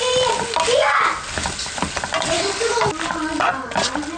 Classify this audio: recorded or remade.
recorded